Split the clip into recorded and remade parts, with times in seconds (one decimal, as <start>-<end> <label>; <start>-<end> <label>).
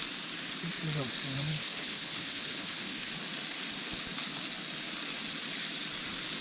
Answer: 0.0-1.5 recorded; 1.5-3.1 remade; 3.1-6.4 recorded